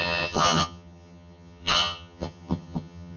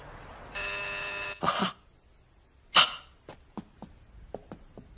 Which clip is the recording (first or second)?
second